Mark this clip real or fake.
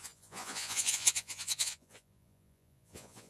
fake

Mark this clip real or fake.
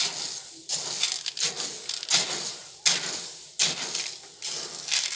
real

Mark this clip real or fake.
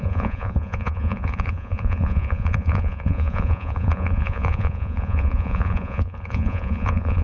fake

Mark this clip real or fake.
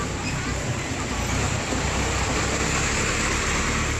real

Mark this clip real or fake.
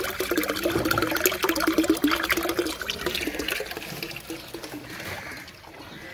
real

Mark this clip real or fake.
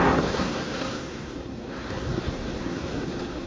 fake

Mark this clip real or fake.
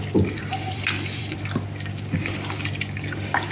fake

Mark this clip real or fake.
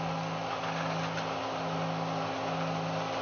real